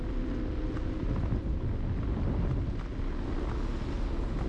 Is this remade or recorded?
recorded